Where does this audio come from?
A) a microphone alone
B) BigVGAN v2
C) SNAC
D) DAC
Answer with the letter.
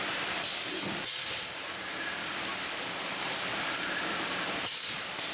B